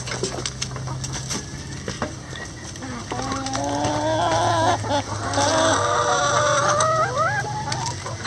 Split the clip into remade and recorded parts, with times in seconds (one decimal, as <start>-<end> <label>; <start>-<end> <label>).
0.0-8.3 recorded